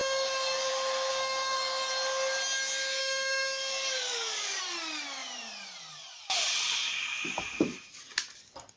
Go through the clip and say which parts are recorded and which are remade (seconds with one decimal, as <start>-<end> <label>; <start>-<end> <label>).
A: 0.0-0.7 remade; 0.7-1.1 recorded; 1.1-1.9 remade; 1.9-3.0 recorded; 3.0-4.6 remade; 4.6-8.8 recorded

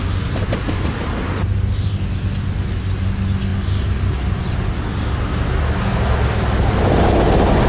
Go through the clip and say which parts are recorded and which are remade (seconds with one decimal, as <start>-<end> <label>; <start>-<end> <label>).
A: 0.0-7.7 recorded